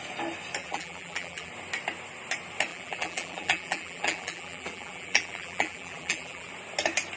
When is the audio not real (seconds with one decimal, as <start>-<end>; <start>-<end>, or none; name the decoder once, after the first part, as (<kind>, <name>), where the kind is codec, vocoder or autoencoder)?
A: 0.6-1.5 (vocoder, BigVGAN v2); 2.7-6.5